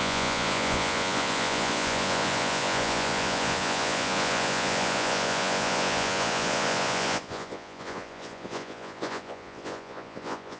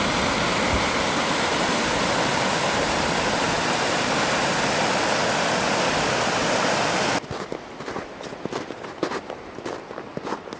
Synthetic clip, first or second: first